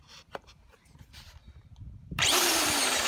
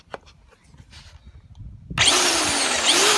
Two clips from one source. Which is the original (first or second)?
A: second